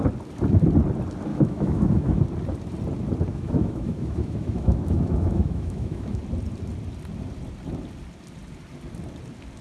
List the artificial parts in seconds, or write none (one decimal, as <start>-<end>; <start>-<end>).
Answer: 1.3-2.2; 3.3-6.2